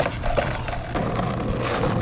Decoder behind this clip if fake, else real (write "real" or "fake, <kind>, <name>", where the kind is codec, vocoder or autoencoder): real